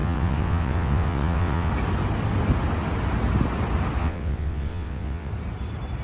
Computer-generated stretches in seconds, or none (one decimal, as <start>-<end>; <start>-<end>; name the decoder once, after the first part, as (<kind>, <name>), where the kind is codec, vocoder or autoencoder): 0.0-1.7 (vocoder, WaveNeXt); 4.0-5.3